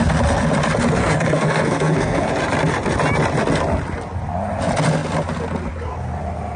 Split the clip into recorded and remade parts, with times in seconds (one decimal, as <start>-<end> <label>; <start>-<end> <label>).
0.0-1.0 recorded; 1.0-2.3 remade; 2.3-6.6 recorded